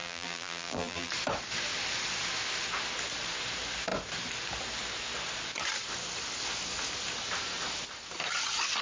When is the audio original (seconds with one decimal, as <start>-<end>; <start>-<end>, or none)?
1.1-8.8